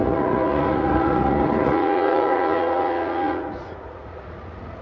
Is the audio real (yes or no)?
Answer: no